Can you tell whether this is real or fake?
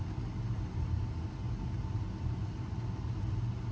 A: real